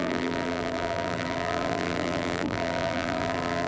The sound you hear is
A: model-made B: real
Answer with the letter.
A